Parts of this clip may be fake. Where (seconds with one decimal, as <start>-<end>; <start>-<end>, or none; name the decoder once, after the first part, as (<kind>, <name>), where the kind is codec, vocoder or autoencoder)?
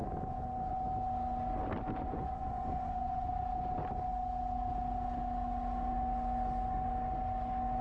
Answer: 2.0-3.3 (vocoder, Vocos)